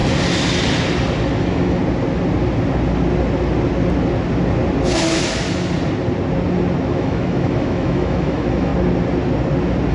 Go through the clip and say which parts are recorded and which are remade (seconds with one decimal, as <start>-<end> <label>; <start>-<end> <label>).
0.0-1.4 recorded; 1.4-1.8 remade; 1.8-6.9 recorded; 6.9-8.7 remade; 8.7-9.9 recorded